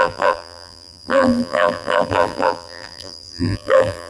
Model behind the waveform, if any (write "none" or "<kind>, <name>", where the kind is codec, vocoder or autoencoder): vocoder, BigVGAN v2